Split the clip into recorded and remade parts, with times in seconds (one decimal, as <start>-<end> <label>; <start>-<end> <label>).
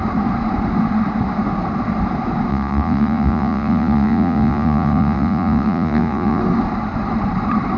0.0-2.5 recorded; 2.5-6.4 remade; 6.4-7.8 recorded